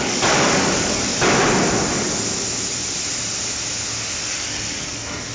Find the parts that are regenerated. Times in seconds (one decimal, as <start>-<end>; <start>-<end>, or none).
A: 0.0-1.1; 4.3-5.3